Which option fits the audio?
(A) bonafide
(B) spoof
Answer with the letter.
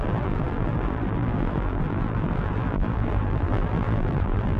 B